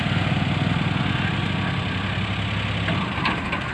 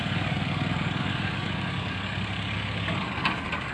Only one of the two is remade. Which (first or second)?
second